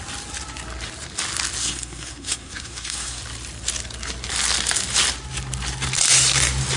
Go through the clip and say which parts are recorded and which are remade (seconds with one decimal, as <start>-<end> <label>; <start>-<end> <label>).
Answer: 0.0-1.6 recorded; 1.6-3.2 remade; 3.2-6.8 recorded